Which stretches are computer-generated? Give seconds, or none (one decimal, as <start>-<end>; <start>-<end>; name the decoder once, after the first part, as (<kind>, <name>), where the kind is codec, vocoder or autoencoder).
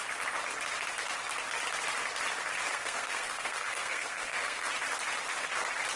2.7-4.7 (codec, SNAC)